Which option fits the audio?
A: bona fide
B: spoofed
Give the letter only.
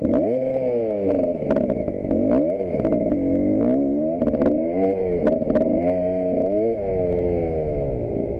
B